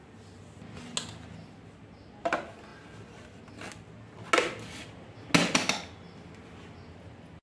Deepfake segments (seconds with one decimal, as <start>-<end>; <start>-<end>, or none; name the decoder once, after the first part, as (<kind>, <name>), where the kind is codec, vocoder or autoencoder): none